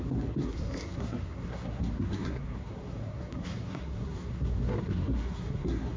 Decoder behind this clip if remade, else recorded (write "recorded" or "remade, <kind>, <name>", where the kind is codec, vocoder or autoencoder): remade, codec, SNAC